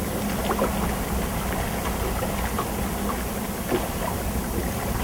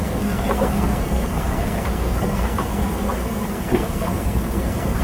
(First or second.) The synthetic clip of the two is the second